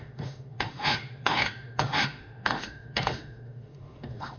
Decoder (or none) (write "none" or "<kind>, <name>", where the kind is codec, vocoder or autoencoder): autoencoder, DAC-VAE